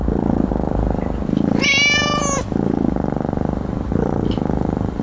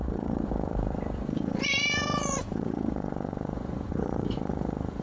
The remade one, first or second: second